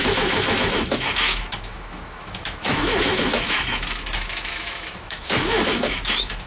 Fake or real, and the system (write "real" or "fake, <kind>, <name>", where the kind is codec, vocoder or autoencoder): fake, autoencoder, DAC-VAE